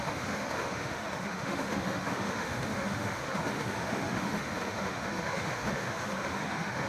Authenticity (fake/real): fake